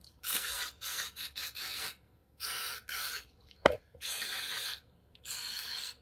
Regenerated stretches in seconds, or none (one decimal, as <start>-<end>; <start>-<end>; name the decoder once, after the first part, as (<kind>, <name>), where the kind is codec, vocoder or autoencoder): 0.0-6.0 (codec, SNAC)